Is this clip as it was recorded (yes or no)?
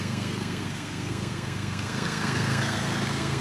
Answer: no